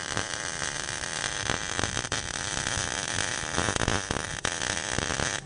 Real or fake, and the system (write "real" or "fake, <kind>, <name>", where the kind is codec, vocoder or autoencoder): real